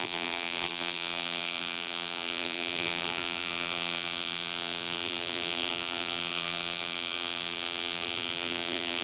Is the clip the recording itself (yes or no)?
no